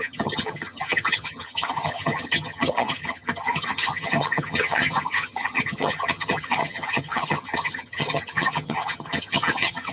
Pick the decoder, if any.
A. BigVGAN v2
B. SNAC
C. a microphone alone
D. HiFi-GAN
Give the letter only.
D